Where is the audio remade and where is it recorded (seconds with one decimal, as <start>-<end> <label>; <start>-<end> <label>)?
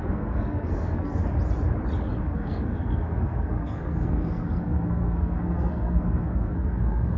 0.0-1.2 remade; 1.2-2.2 recorded; 2.2-7.2 remade